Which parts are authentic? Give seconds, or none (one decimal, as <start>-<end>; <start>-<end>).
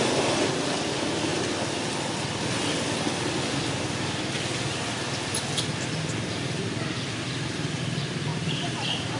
0.0-8.3